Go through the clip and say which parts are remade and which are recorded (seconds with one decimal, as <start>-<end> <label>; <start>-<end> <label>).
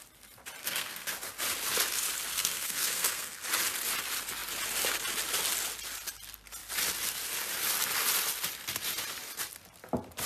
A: 0.0-0.6 recorded; 0.6-1.1 remade; 1.1-2.3 recorded; 2.3-3.4 remade; 3.4-10.3 recorded